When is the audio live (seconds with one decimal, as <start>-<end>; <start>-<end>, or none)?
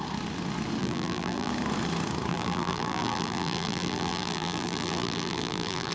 0.0-0.8; 1.5-2.3